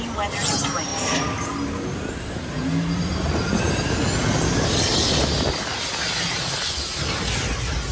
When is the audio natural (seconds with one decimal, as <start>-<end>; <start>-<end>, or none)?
0.0-5.7; 6.2-7.9